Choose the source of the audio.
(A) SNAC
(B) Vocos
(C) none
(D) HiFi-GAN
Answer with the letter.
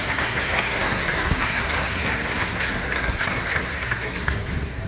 A